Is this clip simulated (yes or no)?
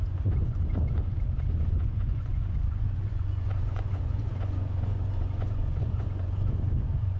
yes